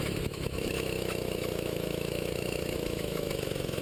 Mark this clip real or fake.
fake